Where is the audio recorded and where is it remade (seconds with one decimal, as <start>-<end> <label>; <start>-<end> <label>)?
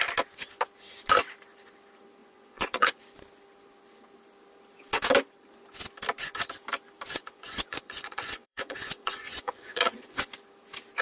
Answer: 0.0-2.2 recorded; 2.2-3.0 remade; 3.0-7.2 recorded; 7.2-10.3 remade; 10.3-11.0 recorded